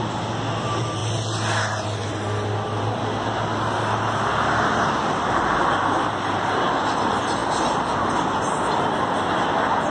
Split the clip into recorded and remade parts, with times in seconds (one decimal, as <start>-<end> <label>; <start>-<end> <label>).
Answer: 0.0-9.9 recorded